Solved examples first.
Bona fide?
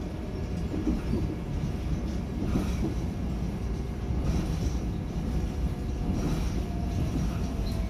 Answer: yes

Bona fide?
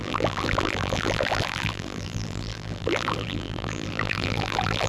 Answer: no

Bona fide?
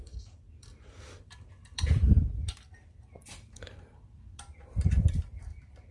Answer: no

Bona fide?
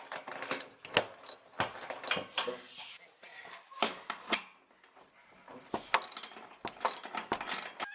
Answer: yes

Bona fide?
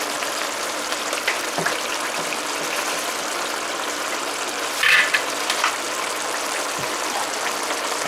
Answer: no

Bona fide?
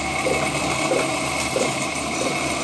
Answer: no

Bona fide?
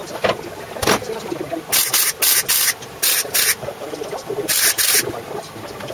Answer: yes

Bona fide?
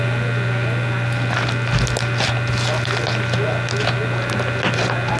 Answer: yes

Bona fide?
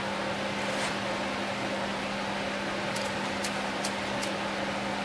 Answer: yes